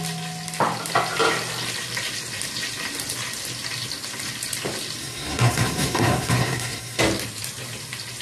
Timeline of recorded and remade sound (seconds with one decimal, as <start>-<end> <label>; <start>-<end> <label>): 0.0-5.0 recorded; 5.0-7.0 remade; 7.0-8.2 recorded